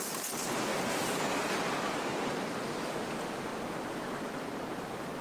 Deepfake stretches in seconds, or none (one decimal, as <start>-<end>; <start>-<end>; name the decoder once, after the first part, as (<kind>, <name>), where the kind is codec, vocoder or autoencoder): 0.0-0.7 (vocoder, BigVGAN v2); 2.3-3.5; 4.8-5.2